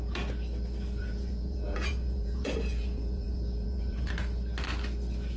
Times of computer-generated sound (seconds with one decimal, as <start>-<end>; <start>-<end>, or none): 1.0-4.1